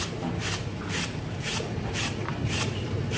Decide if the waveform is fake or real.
real